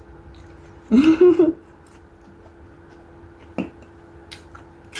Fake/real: real